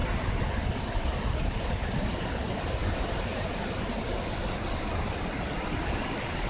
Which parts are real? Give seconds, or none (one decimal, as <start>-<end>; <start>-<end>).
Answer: 0.0-6.5